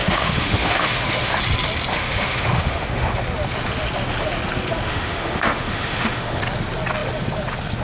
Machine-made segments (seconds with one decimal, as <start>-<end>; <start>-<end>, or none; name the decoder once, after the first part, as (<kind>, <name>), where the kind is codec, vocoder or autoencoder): 0.0-1.4 (autoencoder, DAC-VAE); 1.9-3.1; 4.9-6.4